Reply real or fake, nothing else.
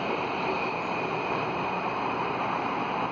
real